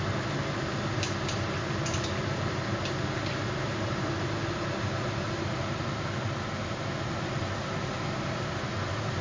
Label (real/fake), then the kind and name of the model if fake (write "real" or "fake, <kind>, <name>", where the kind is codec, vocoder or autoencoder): real